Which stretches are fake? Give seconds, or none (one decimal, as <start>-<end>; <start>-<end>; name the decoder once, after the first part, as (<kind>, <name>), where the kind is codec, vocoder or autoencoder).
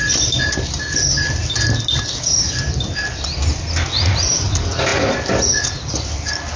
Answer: 3.9-4.5 (vocoder, Vocos)